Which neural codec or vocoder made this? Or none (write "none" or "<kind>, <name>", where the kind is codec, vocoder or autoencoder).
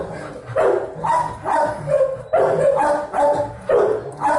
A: none